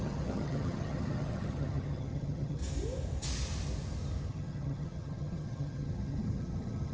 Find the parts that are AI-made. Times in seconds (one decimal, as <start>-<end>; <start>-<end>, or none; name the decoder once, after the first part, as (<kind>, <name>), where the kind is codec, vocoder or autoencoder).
0.0-2.6 (vocoder, HiFi-GAN); 4.3-6.9